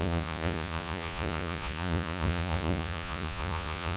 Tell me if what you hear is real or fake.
fake